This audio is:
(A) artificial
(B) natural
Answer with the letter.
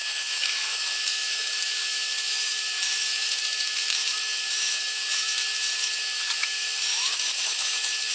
A